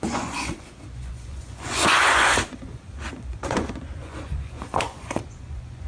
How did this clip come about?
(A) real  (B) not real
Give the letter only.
B